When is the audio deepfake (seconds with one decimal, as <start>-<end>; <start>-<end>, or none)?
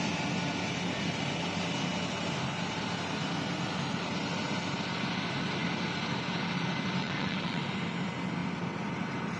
7.0-7.6